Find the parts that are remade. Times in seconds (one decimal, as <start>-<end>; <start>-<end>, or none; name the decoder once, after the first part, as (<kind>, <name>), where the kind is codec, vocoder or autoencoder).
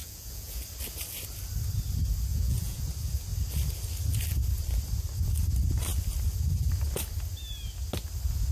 0.0-0.6 (vocoder, Vocos); 2.3-2.8